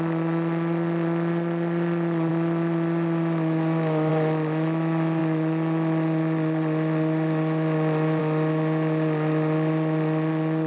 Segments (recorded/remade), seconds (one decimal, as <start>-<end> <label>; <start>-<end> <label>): 0.0-10.7 recorded